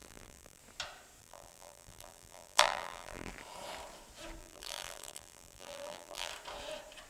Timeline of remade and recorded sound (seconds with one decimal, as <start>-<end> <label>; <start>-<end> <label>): 0.0-0.6 remade; 0.6-1.2 recorded; 1.2-3.3 remade; 3.3-4.4 recorded; 4.4-6.3 remade; 6.3-7.1 recorded